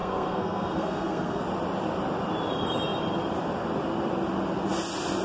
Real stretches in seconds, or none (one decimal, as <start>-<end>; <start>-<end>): 1.4-5.2